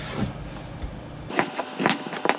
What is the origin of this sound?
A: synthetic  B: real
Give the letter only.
B